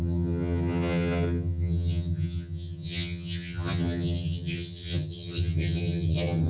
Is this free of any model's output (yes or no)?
no